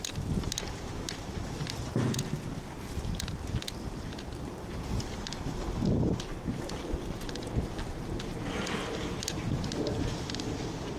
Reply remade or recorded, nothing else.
recorded